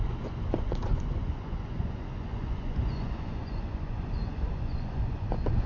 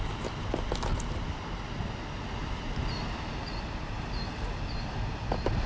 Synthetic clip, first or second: first